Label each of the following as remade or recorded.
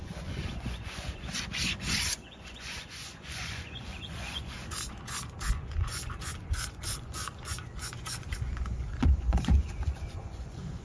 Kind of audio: remade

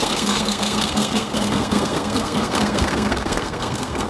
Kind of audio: remade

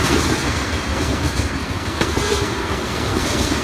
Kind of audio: remade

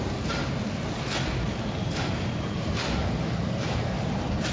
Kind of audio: remade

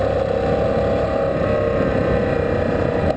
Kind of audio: recorded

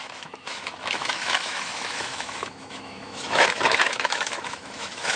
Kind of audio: remade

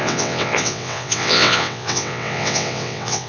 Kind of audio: remade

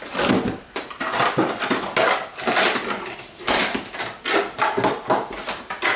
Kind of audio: recorded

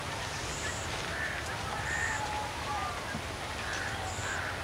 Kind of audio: recorded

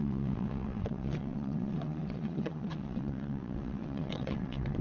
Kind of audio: remade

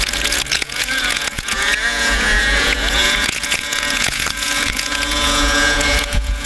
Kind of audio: remade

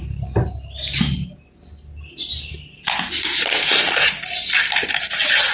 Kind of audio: recorded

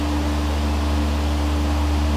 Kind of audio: recorded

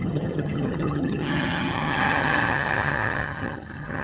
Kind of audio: remade